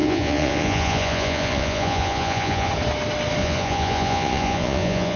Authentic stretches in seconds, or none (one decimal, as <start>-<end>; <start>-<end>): 2.7-3.4